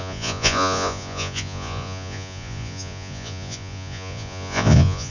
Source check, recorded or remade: remade